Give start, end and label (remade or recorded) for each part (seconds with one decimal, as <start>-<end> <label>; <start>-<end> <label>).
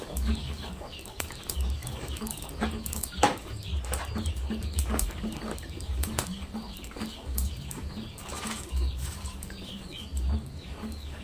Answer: 0.0-3.7 remade; 3.7-4.3 recorded; 4.3-11.2 remade